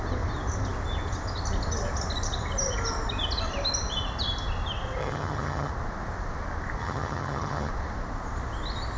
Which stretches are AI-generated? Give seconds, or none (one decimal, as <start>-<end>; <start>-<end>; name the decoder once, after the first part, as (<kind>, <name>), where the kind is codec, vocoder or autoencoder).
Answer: 5.0-5.7 (vocoder, HiFi-GAN); 6.8-7.7